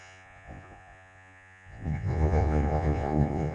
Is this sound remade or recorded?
remade